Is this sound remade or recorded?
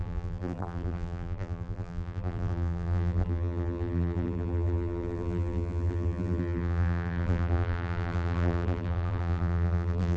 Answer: remade